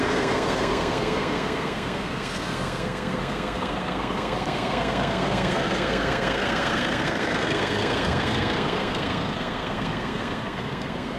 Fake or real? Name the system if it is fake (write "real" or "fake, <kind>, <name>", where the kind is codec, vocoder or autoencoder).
fake, codec, SNAC